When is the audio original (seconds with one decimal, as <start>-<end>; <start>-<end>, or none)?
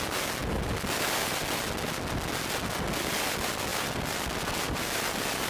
0.0-5.5